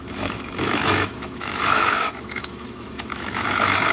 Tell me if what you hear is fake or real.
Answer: fake